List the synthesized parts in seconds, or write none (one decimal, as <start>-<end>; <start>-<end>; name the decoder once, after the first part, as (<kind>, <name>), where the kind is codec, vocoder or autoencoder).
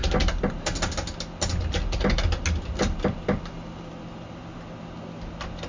none